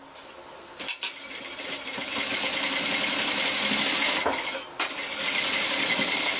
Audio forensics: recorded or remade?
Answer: recorded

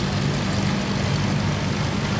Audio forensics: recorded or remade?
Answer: recorded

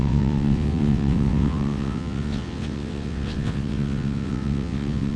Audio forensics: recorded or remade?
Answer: remade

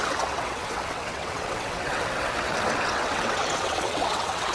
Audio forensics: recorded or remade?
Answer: remade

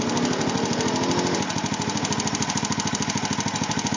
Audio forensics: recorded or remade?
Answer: recorded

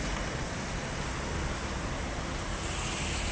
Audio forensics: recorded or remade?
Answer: recorded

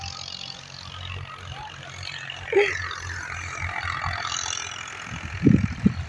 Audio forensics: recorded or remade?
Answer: recorded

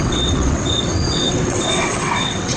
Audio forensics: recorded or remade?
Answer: remade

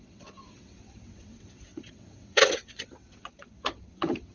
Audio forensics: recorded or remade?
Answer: remade